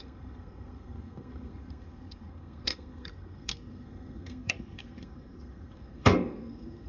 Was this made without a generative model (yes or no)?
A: no